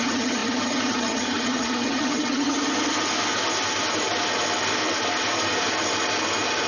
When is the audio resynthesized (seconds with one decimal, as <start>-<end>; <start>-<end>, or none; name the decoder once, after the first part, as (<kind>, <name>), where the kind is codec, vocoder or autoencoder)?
0.0-2.6 (vocoder, HiFi-GAN)